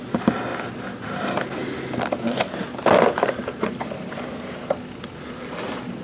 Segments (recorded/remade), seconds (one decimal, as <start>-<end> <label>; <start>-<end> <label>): 0.0-6.0 recorded